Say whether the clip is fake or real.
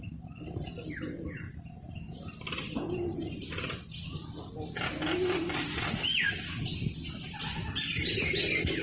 fake